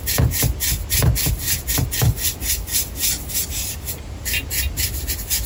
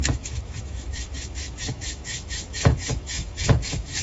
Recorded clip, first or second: first